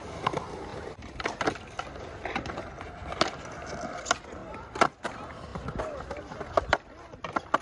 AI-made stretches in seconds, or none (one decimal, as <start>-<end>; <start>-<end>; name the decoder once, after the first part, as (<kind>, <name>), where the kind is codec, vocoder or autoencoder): 0.7-2.0 (vocoder, BigVGAN v2); 4.4-5.1; 5.5-6.2